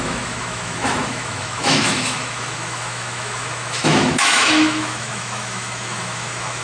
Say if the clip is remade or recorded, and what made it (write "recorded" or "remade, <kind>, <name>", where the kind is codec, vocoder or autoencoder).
remade, autoencoder, DAC-VAE